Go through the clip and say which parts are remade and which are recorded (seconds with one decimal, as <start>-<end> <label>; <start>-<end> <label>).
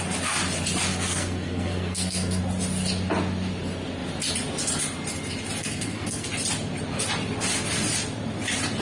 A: 0.0-0.9 recorded; 0.9-2.4 remade; 2.4-5.6 recorded; 5.6-6.3 remade; 6.3-8.8 recorded